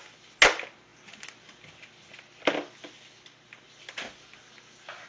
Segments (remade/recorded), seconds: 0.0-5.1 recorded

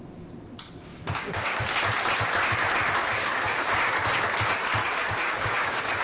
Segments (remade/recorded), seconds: 0.0-0.9 recorded; 0.9-1.6 remade; 1.6-3.0 recorded; 3.0-3.7 remade; 3.7-4.8 recorded; 4.8-6.0 remade

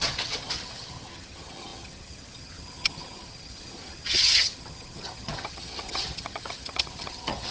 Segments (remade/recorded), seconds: 0.0-7.5 remade

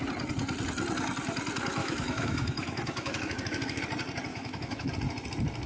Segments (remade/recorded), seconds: 0.0-1.8 recorded; 1.8-3.8 remade; 3.8-4.3 recorded; 4.3-4.9 remade; 4.9-5.7 recorded

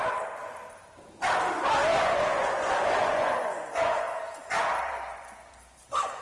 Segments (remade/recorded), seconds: 0.0-1.9 recorded; 1.9-4.2 remade; 4.2-4.9 recorded; 4.9-6.2 remade

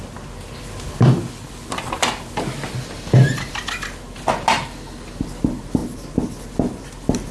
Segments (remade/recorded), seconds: 0.0-7.3 recorded

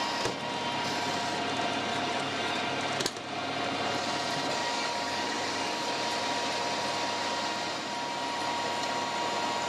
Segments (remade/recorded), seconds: 0.0-1.9 recorded; 1.9-2.6 remade; 2.6-4.6 recorded; 4.6-5.9 remade; 5.9-9.7 recorded

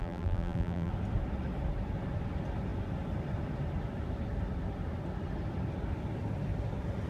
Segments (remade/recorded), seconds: 0.0-0.9 remade; 0.9-7.1 recorded